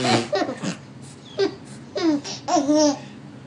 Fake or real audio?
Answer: real